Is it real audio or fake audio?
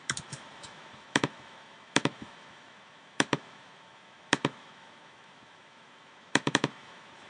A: fake